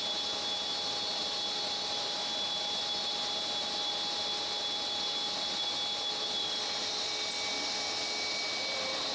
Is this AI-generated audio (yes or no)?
no